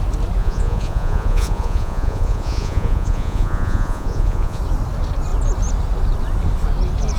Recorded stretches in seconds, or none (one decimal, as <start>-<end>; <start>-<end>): 0.0-0.4; 4.6-7.2